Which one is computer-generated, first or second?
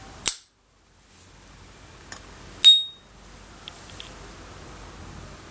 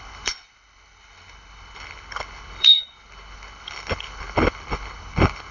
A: second